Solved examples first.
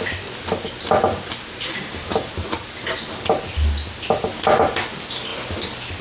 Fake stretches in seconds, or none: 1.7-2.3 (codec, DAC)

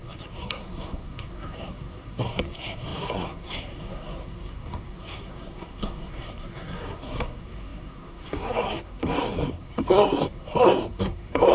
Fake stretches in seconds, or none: 0.0-11.5 (codec, SNAC)

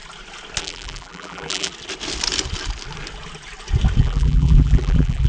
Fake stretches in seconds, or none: 0.6-1.7 (vocoder, BigVGAN v2); 4.0-5.3

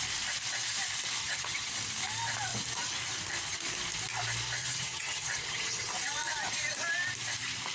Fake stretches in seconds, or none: 1.2-1.7 (vocoder, HiFi-GAN); 4.6-5.9

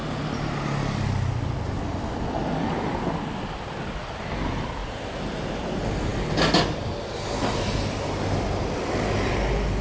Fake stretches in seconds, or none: none